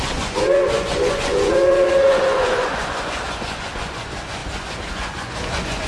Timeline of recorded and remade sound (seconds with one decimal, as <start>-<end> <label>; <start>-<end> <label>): 0.0-5.9 remade